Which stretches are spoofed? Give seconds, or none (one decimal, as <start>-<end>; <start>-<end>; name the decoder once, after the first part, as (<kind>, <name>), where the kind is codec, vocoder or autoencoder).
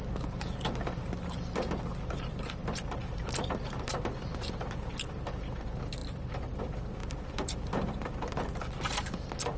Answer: 6.0-6.6 (vocoder, BigVGAN v2); 7.0-8.2